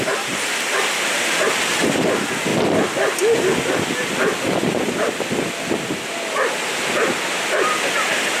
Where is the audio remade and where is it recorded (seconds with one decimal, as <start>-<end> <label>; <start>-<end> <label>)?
0.0-8.4 recorded